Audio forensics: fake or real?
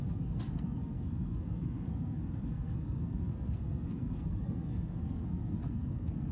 fake